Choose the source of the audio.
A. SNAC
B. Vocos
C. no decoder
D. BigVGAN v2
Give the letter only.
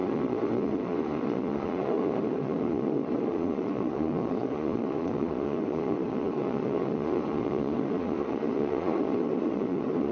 B